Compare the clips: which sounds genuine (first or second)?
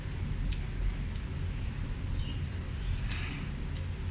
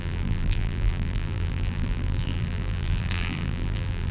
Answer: first